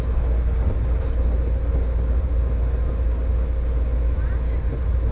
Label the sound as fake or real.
real